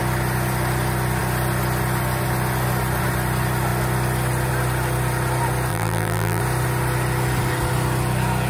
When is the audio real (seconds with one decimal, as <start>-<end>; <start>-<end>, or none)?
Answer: 0.0-5.7; 6.4-8.5